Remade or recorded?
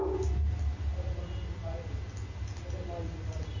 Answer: recorded